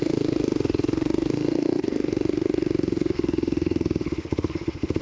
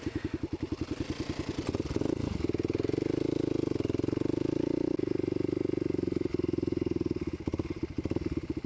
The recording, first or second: second